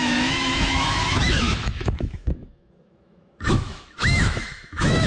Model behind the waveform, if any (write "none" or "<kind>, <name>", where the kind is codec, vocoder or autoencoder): autoencoder, DAC-VAE